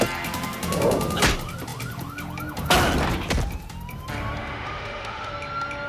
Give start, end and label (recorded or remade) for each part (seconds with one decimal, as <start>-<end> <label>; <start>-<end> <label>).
0.0-4.4 recorded; 4.4-5.3 remade; 5.3-5.9 recorded